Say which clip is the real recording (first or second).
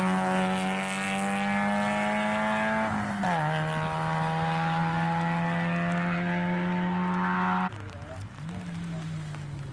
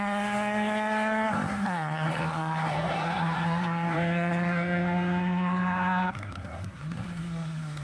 first